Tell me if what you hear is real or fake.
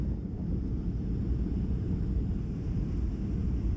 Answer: real